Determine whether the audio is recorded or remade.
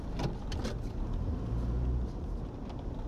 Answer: recorded